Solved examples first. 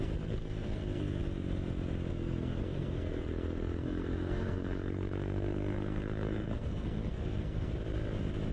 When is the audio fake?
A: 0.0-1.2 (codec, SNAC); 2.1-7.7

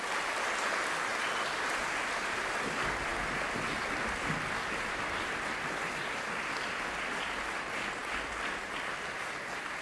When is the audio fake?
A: none